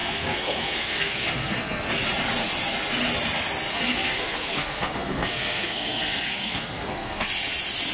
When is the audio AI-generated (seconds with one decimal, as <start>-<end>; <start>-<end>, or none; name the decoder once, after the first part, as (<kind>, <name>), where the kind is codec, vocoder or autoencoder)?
0.0-1.9 (codec, SNAC); 3.7-7.3